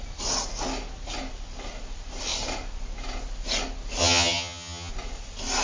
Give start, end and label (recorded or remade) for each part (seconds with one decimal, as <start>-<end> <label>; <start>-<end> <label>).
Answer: 0.0-4.0 recorded; 4.0-4.9 remade; 4.9-5.6 recorded